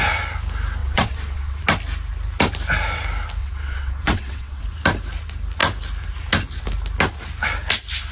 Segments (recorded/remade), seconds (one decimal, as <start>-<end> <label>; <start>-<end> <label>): 0.0-0.8 recorded; 0.8-1.6 remade; 1.6-3.4 recorded; 3.4-4.6 remade; 4.6-8.1 recorded